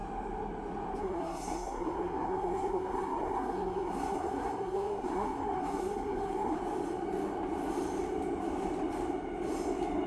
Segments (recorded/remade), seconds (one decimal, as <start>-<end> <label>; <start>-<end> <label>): 0.0-1.0 recorded; 1.0-6.6 remade; 6.6-10.1 recorded